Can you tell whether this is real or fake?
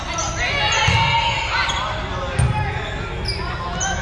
real